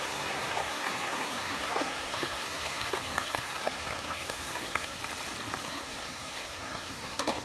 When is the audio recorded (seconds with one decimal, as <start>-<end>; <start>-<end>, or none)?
5.0-5.6